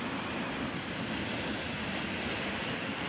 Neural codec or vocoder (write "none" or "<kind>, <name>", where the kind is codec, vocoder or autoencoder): none